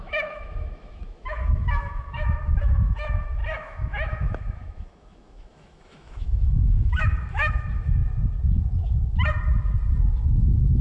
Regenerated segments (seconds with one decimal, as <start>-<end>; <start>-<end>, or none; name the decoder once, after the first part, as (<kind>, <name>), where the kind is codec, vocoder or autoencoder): 0.0-8.0 (autoencoder, DAC-VAE)